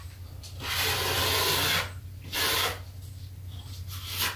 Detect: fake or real real